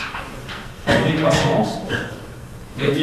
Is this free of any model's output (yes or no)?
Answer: no